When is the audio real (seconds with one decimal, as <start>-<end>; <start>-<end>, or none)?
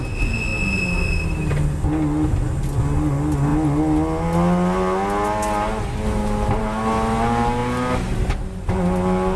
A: 0.0-9.4